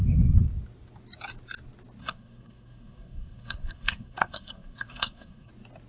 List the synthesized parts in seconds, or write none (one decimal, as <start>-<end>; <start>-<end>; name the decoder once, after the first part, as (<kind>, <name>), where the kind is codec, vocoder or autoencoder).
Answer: 2.0-5.5 (codec, SNAC)